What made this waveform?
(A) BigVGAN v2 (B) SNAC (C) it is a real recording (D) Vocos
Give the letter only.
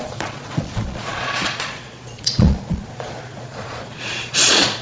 D